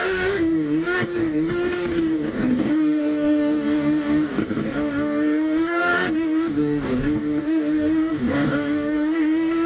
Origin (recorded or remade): remade